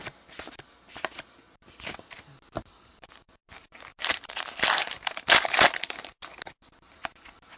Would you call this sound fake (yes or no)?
no